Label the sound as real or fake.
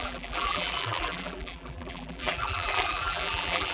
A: fake